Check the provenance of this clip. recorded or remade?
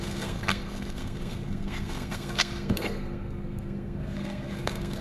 remade